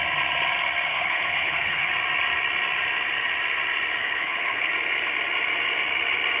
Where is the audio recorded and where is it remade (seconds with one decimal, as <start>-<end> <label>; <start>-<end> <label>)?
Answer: 0.0-0.9 recorded; 0.9-1.9 remade; 1.9-4.0 recorded; 4.0-4.7 remade; 4.7-6.4 recorded